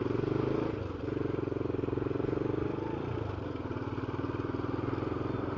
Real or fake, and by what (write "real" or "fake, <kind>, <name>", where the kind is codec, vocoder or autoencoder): real